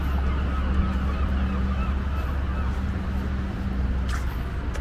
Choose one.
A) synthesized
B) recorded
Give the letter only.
B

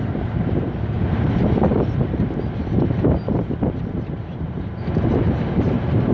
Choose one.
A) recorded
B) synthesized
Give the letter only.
B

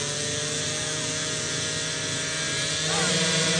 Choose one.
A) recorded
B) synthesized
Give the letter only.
A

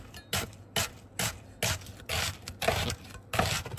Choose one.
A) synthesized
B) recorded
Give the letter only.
B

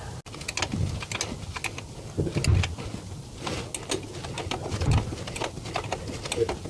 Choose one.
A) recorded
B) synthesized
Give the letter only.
A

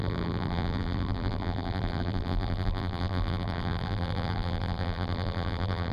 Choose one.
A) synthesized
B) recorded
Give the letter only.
A